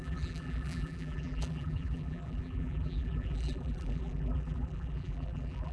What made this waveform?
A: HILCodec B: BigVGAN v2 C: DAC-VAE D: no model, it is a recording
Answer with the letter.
B